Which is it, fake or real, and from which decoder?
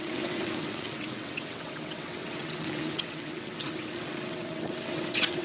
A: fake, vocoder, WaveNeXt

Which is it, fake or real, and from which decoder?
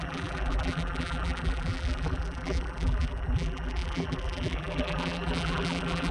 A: fake, vocoder, BigVGAN v2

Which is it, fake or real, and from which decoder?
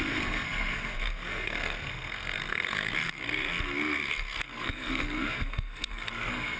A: fake, codec, SNAC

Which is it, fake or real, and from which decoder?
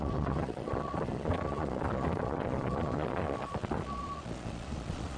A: fake, vocoder, Vocos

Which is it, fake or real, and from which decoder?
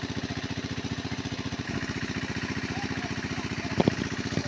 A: fake, vocoder, BigVGAN v2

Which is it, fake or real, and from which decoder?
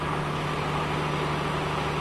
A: real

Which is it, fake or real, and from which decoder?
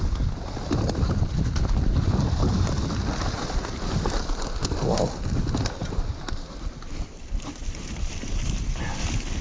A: real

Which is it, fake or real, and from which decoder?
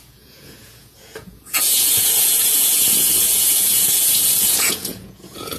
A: fake, vocoder, Vocos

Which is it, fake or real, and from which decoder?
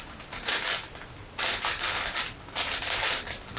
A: real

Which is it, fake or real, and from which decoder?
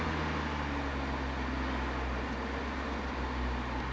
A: real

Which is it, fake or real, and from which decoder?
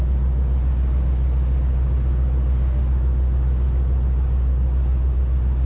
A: real